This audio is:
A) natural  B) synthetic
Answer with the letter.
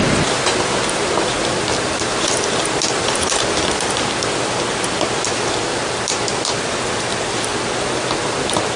A